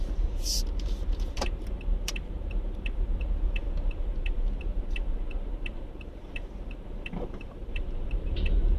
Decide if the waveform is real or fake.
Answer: fake